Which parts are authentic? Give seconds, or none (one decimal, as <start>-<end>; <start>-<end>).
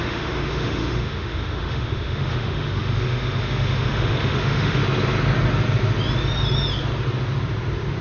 4.8-8.0